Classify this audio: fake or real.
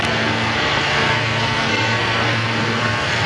fake